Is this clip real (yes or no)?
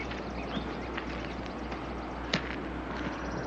yes